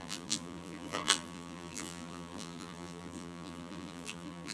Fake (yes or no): yes